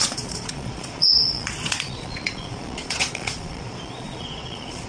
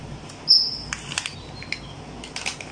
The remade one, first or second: first